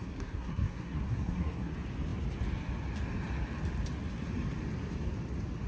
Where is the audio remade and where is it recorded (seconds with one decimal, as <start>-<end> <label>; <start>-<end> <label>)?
0.0-1.7 remade; 1.7-5.7 recorded